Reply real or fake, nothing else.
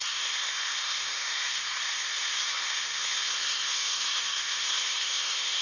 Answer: fake